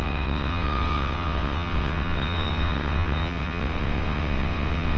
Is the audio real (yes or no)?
no